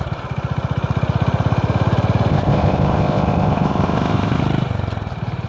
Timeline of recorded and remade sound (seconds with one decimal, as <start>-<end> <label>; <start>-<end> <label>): 0.0-2.3 recorded; 2.3-4.4 remade; 4.4-5.5 recorded